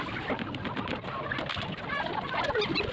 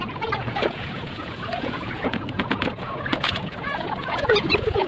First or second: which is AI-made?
second